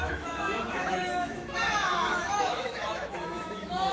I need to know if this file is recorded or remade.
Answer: remade